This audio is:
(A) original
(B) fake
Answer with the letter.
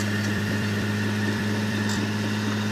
B